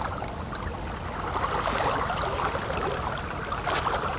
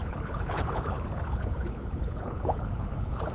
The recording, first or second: first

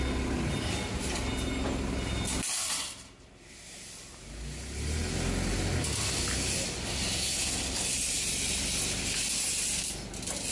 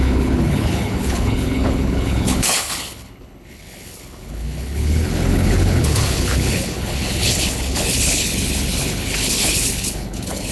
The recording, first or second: first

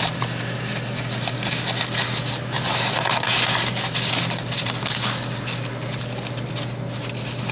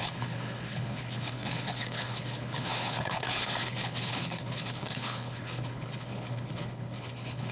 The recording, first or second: first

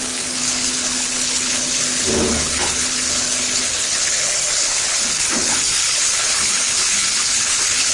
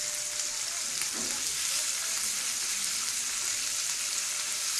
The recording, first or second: second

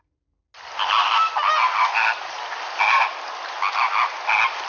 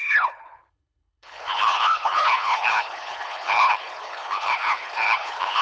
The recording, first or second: first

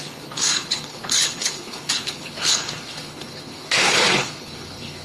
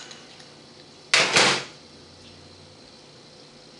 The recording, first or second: second